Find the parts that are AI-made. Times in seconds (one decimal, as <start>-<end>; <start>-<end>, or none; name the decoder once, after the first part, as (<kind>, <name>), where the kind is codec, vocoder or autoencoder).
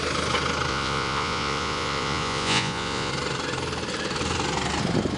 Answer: 0.7-3.1 (vocoder, Vocos)